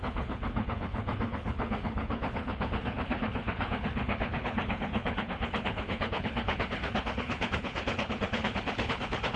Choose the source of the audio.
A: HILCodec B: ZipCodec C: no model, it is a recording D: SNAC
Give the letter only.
A